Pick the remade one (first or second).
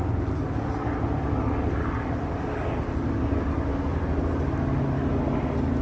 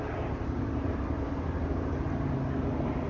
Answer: second